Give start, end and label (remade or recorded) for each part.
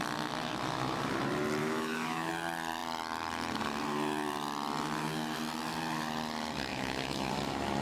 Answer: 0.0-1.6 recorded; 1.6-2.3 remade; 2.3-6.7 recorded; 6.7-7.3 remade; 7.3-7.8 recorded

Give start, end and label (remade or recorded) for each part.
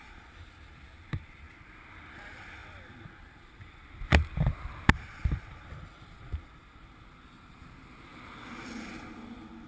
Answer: 0.0-8.1 remade; 8.1-9.7 recorded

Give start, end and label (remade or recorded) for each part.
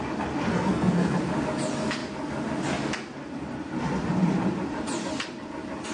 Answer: 0.0-0.5 recorded; 0.5-1.2 remade; 1.2-5.9 recorded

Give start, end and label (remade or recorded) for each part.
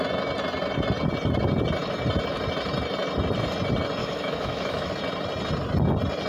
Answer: 0.0-4.0 recorded; 4.0-4.9 remade; 4.9-6.3 recorded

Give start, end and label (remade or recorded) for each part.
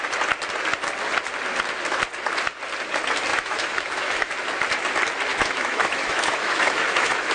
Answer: 0.0-3.3 recorded; 3.3-4.3 remade; 4.3-5.3 recorded; 5.3-7.3 remade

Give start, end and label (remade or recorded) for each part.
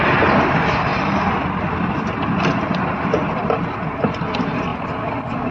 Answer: 0.0-0.9 recorded; 0.9-1.5 remade; 1.5-5.5 recorded